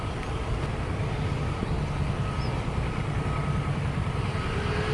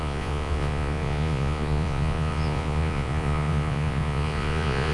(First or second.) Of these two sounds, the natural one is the first